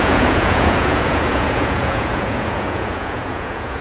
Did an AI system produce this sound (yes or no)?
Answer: yes